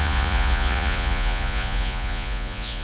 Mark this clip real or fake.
fake